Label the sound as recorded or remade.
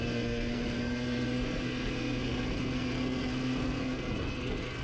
remade